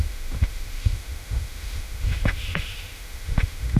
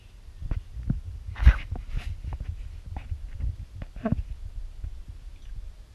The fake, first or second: first